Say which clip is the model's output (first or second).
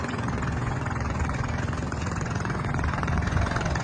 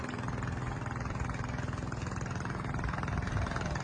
first